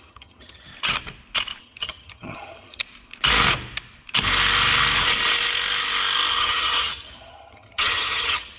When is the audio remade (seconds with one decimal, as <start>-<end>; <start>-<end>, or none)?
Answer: 0.0-0.7; 1.6-2.8; 6.3-8.6